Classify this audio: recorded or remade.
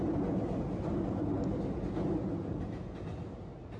recorded